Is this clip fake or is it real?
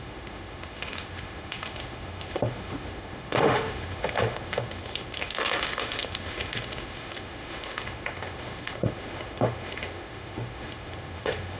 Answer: fake